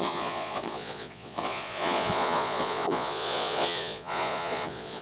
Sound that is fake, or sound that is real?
fake